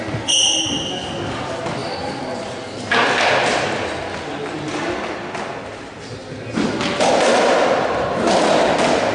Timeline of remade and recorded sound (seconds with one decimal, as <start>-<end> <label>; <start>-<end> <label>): 0.0-9.1 recorded